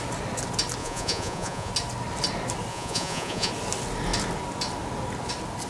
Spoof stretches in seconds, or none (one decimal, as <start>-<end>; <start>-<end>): 0.8-1.7; 2.7-3.5